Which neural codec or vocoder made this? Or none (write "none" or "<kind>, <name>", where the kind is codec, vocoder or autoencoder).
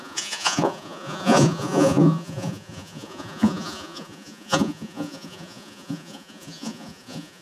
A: vocoder, Vocos